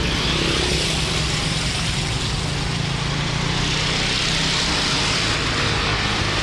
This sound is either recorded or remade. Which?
recorded